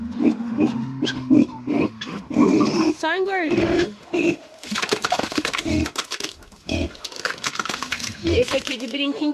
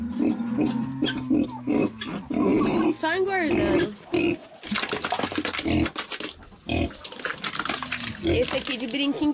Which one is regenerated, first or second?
first